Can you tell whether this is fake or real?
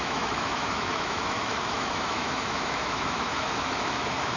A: fake